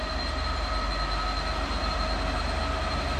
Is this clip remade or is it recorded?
recorded